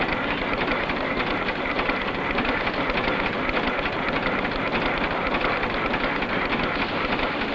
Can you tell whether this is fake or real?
real